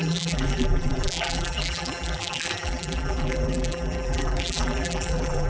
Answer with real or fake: fake